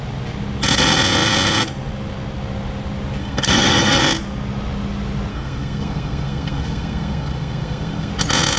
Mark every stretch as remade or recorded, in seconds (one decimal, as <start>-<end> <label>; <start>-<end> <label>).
0.0-3.2 recorded; 3.2-4.0 remade; 4.0-5.3 recorded; 5.3-8.1 remade; 8.1-8.6 recorded